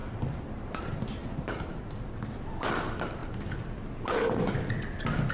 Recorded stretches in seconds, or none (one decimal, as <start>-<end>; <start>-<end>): 0.0-1.2; 1.7-5.3